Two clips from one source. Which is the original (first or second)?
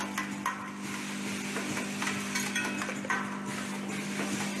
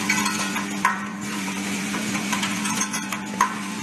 first